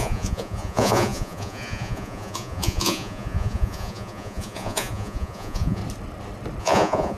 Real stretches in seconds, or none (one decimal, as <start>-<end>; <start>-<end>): 5.8-6.6